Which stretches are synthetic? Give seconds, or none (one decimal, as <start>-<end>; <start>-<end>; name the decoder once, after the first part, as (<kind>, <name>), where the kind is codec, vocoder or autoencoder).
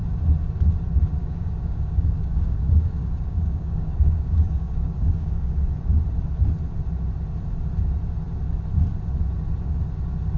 1.2-5.6 (codec, DAC)